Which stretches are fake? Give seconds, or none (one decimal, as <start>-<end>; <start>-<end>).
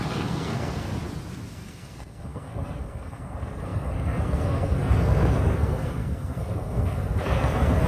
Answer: 0.0-0.9; 1.5-7.9